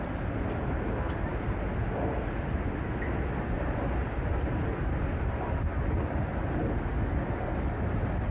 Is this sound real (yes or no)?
yes